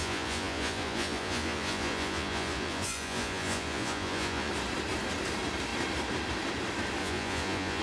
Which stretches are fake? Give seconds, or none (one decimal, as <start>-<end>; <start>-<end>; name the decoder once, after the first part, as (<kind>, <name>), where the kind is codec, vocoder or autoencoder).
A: 0.0-4.5 (vocoder, Vocos); 7.0-7.8